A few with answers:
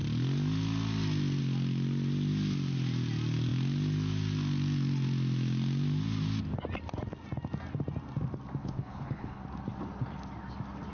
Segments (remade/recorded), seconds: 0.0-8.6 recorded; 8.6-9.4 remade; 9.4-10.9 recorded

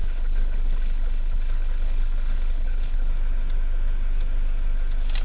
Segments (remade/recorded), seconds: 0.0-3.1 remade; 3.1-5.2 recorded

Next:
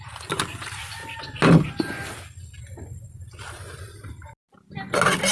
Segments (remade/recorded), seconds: 0.0-5.3 recorded